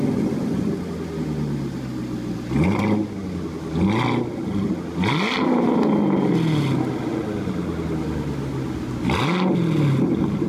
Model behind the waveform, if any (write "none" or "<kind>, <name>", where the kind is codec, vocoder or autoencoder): none